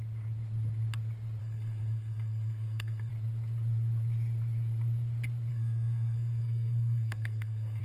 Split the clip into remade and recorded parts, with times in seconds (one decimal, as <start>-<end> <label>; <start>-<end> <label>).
0.0-1.4 recorded; 1.4-3.1 remade; 3.1-5.5 recorded; 5.5-7.8 remade